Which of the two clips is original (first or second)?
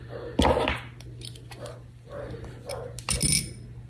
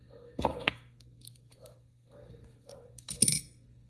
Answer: first